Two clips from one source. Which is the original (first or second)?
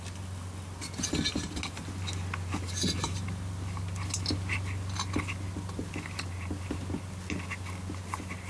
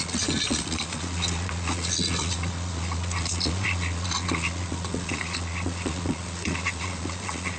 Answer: first